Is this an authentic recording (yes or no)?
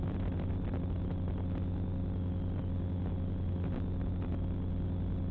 yes